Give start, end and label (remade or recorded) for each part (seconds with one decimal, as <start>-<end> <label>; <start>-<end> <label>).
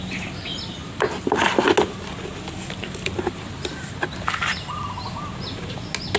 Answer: 0.0-6.2 recorded